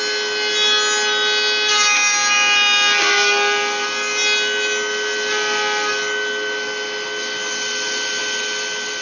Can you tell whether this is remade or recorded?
recorded